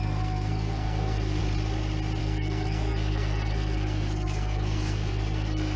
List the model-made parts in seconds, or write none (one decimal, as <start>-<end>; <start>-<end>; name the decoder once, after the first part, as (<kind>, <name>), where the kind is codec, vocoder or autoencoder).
0.0-1.4 (codec, SNAC); 2.2-5.8